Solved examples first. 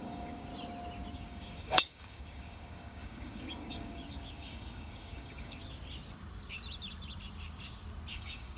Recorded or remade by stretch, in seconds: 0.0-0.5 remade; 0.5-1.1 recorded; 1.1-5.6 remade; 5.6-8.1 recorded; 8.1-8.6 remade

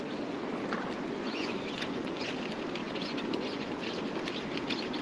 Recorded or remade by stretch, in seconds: 0.0-1.2 recorded; 1.2-2.3 remade; 2.3-2.8 recorded; 2.8-3.8 remade; 3.8-5.0 recorded

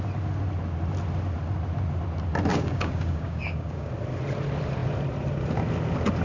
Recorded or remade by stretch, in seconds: 0.0-2.5 recorded; 2.5-3.9 remade; 3.9-6.2 recorded